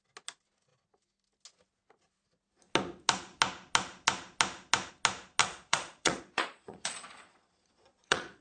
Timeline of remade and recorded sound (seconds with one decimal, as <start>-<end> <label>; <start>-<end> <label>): 0.0-5.4 recorded; 5.4-8.4 remade